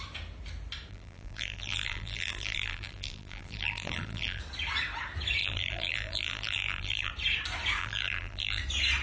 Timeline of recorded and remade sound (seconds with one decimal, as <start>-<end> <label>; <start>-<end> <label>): 0.0-0.9 recorded; 0.9-4.4 remade; 4.4-5.4 recorded; 5.4-7.1 remade; 7.1-7.8 recorded; 7.8-8.6 remade; 8.6-9.0 recorded